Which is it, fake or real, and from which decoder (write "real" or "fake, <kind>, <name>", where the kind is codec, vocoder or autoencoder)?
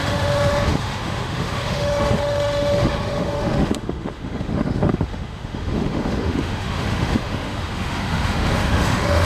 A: fake, autoencoder, DAC-VAE